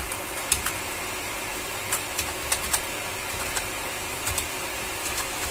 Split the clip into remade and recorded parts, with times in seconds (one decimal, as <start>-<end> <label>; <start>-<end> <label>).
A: 0.0-5.0 recorded; 5.0-5.5 remade

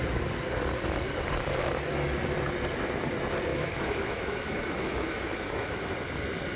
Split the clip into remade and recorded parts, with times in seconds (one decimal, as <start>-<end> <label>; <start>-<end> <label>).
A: 0.0-3.5 recorded; 3.5-5.9 remade; 5.9-6.6 recorded